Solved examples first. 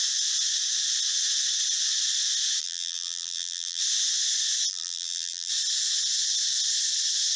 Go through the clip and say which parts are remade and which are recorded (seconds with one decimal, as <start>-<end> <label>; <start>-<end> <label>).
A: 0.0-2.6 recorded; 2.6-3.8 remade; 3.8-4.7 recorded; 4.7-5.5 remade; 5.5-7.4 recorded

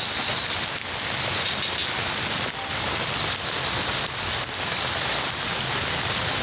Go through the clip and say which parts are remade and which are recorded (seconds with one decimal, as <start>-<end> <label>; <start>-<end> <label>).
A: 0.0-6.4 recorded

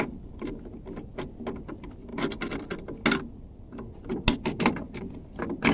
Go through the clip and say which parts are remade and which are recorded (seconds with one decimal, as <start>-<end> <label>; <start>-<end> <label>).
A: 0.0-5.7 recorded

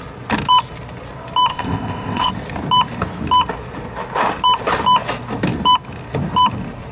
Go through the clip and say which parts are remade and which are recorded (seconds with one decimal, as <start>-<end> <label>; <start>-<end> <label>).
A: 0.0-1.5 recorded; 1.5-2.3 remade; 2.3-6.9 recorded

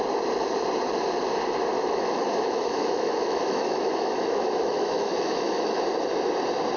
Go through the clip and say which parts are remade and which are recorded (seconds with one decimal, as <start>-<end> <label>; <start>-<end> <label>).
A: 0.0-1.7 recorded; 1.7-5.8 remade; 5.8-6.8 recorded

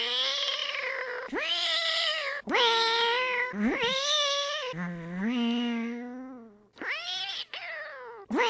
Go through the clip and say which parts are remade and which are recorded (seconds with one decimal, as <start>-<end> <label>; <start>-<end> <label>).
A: 0.0-8.5 recorded